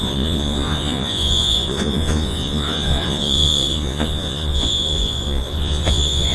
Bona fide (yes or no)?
no